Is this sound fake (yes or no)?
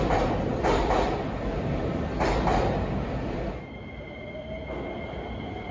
no